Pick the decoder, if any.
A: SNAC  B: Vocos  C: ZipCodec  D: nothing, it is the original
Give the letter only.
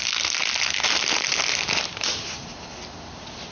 D